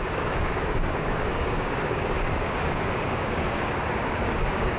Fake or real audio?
fake